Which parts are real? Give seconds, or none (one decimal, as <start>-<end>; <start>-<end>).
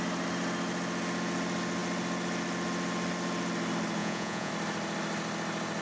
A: 0.0-4.0; 4.5-5.8